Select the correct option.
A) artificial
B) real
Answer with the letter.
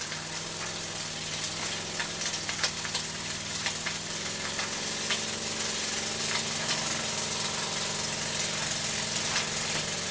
B